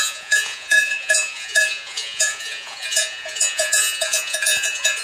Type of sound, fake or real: fake